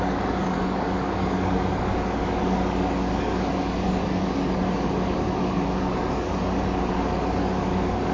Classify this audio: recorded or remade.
remade